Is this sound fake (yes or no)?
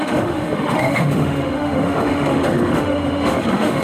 yes